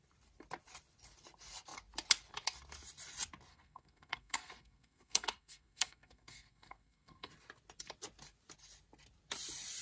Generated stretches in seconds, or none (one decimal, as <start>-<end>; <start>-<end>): 3.5-7.3